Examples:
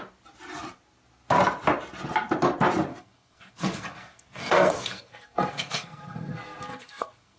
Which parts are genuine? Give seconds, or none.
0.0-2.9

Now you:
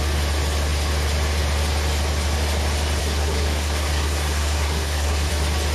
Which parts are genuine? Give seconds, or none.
0.0-3.0; 5.3-5.7

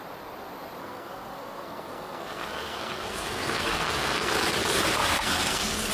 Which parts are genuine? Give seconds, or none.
0.0-0.8; 4.3-5.0